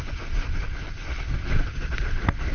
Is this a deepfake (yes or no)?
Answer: no